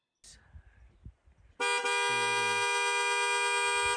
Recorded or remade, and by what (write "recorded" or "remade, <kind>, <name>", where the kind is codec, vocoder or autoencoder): recorded